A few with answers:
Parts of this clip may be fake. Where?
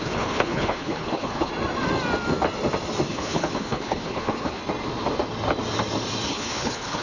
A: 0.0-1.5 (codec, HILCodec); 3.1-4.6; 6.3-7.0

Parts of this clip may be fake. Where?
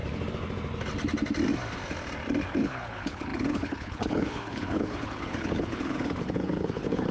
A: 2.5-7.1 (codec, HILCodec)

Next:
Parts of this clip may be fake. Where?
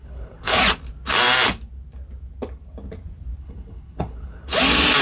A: 0.0-0.6 (codec, HILCodec); 3.4-4.5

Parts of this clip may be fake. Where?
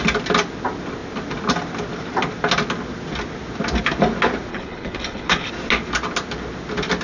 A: 4.5-5.5 (codec, HILCodec)